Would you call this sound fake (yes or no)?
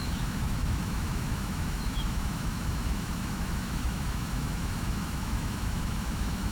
yes